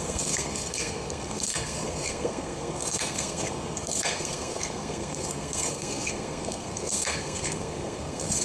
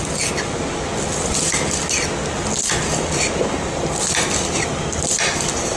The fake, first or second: first